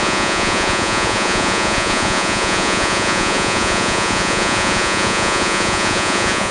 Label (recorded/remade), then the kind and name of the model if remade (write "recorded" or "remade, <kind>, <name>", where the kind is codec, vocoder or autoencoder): remade, vocoder, Vocos